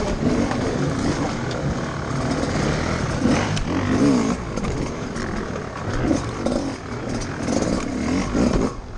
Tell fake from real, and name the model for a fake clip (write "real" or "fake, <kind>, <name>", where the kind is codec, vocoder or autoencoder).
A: real